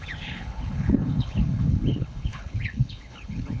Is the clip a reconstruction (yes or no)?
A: yes